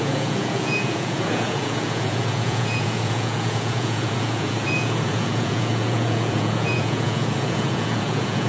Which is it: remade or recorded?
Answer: remade